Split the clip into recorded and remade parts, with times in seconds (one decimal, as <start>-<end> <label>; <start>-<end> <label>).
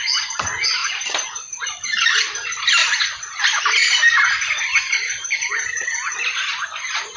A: 0.0-2.8 recorded; 2.8-3.4 remade; 3.4-7.2 recorded